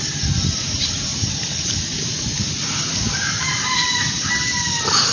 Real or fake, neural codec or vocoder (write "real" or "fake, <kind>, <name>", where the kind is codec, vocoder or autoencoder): real